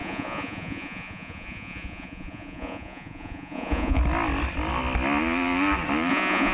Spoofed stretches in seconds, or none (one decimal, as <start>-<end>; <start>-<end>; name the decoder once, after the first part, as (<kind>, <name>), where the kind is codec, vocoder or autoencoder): 0.0-4.0 (vocoder, Vocos); 6.1-6.5